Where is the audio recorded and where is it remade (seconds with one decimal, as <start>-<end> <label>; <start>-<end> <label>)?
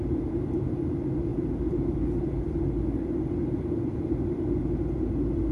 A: 0.0-5.5 remade